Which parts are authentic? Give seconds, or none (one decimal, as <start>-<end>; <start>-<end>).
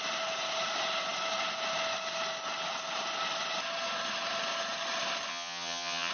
0.0-5.3